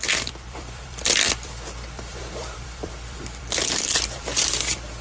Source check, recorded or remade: remade